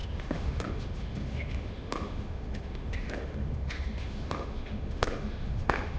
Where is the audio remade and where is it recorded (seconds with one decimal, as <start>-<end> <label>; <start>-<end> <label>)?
0.0-6.0 remade